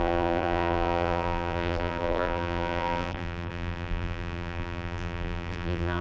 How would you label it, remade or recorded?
remade